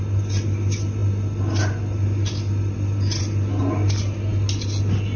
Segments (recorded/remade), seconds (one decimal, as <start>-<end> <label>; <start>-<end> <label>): 0.0-5.2 recorded